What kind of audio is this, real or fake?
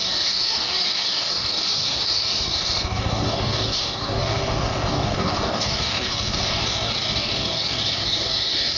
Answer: fake